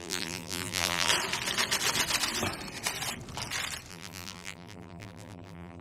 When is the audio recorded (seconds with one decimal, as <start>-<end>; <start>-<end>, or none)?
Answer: 1.1-3.9